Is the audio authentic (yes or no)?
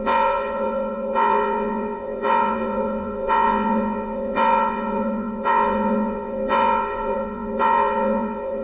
no